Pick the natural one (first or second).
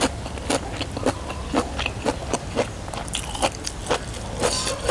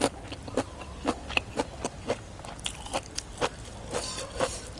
first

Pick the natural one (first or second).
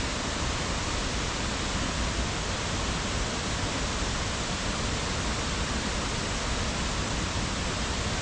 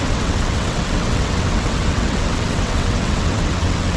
first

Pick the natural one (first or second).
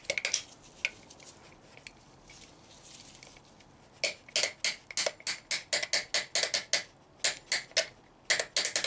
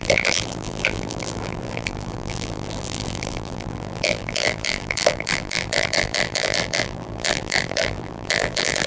first